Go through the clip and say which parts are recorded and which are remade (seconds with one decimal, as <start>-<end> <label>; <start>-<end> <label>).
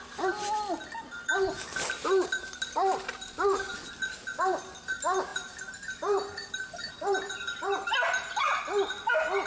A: 0.0-9.5 recorded